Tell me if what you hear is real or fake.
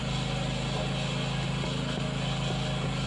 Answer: real